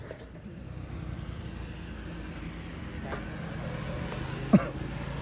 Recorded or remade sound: recorded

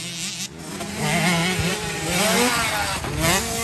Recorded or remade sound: recorded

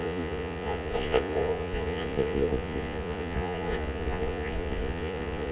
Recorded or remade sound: remade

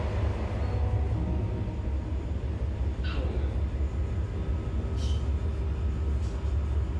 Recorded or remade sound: recorded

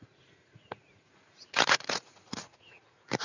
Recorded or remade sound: remade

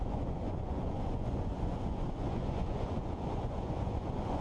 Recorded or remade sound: remade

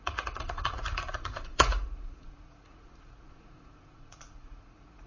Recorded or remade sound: remade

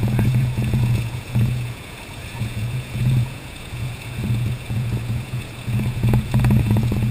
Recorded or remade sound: remade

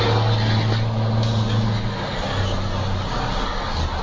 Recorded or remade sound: recorded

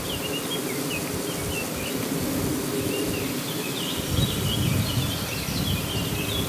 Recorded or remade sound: recorded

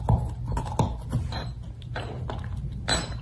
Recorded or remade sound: recorded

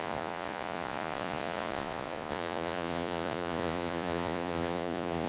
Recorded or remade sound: remade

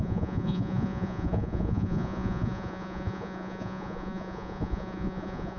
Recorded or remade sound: remade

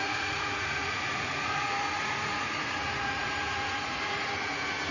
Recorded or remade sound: remade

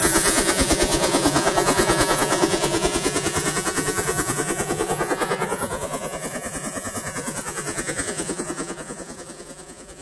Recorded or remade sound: remade